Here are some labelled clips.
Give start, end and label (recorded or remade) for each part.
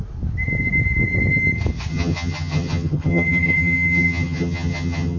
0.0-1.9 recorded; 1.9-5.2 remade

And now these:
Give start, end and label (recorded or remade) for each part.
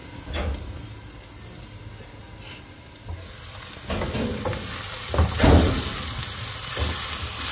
0.0-7.5 recorded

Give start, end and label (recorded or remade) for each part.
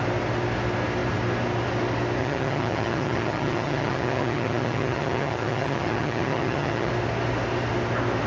0.0-2.2 recorded; 2.2-6.9 remade; 6.9-8.3 recorded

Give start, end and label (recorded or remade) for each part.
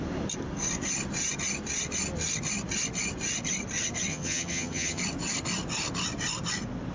0.0-4.1 recorded; 4.1-5.0 remade; 5.0-6.9 recorded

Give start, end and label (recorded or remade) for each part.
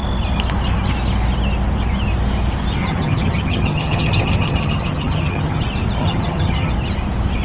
0.0-2.8 recorded; 2.8-5.6 remade; 5.6-6.0 recorded; 6.0-6.7 remade; 6.7-7.4 recorded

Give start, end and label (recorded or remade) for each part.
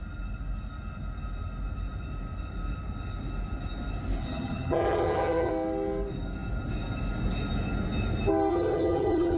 0.0-4.2 recorded; 4.2-5.5 remade; 5.5-8.5 recorded; 8.5-9.4 remade